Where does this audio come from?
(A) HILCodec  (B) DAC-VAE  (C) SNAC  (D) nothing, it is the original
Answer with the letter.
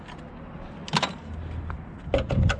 D